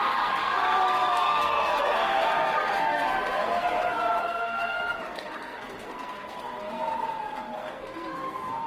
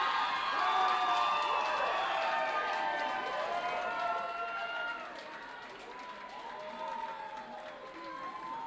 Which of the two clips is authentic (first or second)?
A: second